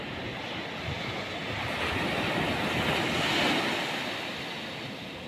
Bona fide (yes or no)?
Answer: yes